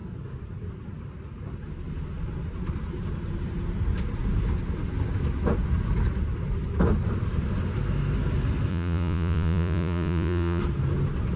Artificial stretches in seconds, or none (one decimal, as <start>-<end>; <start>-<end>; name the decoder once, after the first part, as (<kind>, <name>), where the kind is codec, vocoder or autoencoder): 8.7-10.6 (vocoder, Vocos)